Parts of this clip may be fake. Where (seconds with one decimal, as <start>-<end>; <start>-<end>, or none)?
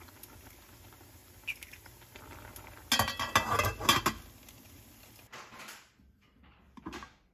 none